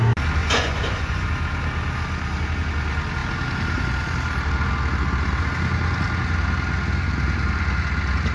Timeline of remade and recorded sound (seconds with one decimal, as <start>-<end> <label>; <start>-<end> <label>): 0.0-0.4 recorded; 0.4-1.3 remade; 1.3-8.3 recorded